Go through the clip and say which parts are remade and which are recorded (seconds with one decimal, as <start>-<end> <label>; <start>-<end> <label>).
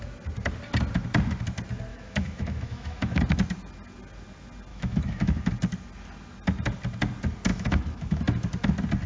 0.0-1.9 recorded; 1.9-3.2 remade; 3.2-4.7 recorded; 4.7-5.5 remade; 5.5-7.5 recorded; 7.5-8.2 remade; 8.2-9.1 recorded